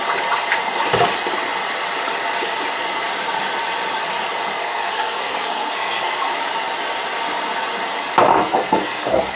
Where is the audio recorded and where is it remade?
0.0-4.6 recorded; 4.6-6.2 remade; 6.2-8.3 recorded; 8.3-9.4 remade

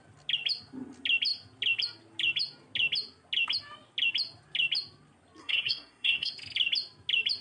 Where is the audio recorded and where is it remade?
0.0-5.4 recorded; 5.4-6.3 remade; 6.3-7.4 recorded

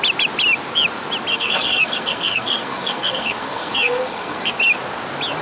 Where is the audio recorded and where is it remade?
0.0-1.3 recorded; 1.3-4.5 remade; 4.5-5.4 recorded

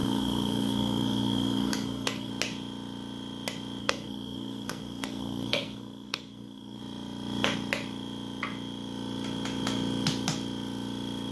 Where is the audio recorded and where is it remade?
0.0-2.3 remade; 2.3-3.8 recorded; 3.8-6.8 remade; 6.8-11.3 recorded